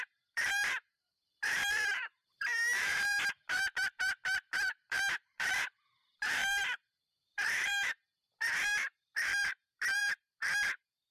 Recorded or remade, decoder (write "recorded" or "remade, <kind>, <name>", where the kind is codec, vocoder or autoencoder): remade, vocoder, BigVGAN v2